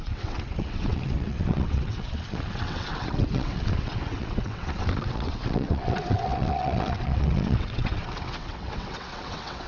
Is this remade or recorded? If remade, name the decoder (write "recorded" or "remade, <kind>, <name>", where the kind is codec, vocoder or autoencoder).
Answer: remade, vocoder, WaveNeXt